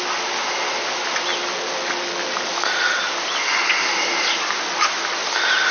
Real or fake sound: real